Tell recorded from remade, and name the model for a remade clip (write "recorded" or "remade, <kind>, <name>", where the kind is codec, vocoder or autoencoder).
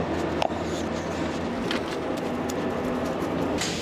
recorded